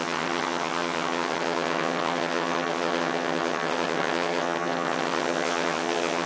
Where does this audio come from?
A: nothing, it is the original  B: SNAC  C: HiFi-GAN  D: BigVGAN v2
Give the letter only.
C